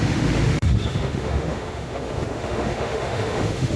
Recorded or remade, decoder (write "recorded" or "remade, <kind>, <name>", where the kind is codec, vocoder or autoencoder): remade, autoencoder, DAC-VAE